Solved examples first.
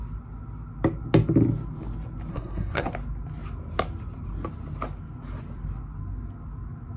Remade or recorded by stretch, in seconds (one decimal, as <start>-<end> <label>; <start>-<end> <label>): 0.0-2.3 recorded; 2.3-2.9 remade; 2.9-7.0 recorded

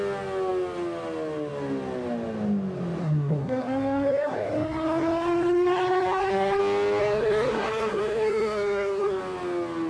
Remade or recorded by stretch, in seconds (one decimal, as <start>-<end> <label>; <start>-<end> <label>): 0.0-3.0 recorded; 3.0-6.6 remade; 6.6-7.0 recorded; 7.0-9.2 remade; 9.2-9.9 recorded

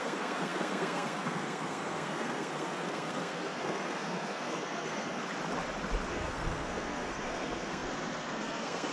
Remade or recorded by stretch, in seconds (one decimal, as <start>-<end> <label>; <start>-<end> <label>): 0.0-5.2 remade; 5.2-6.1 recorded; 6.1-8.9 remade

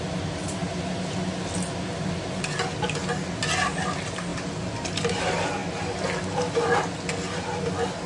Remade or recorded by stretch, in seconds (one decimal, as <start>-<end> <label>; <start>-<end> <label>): 0.0-8.1 recorded

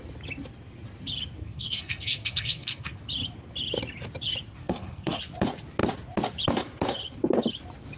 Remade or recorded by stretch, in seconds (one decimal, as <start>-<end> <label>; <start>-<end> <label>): 0.0-1.4 recorded; 1.4-3.0 remade; 3.0-4.6 recorded; 4.6-5.2 remade; 5.2-8.0 recorded

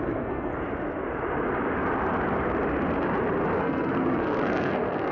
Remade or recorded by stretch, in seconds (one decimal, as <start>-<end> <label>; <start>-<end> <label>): 0.0-0.5 remade; 0.5-3.6 recorded; 3.6-5.1 remade

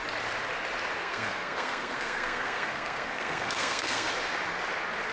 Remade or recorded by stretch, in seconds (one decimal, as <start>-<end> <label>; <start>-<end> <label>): 0.0-1.0 recorded; 1.0-4.1 remade; 4.1-5.1 recorded